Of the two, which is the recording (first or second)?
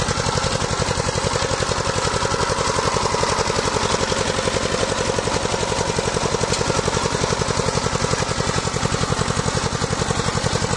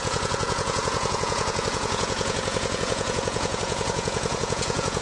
first